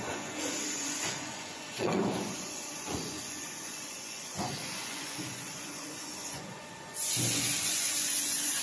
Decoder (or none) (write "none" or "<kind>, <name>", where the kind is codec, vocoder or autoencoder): vocoder, Vocos